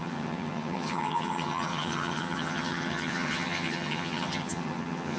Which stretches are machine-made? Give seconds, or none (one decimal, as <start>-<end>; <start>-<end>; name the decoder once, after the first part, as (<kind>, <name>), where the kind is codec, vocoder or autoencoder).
0.0-5.2 (vocoder, HiFi-GAN)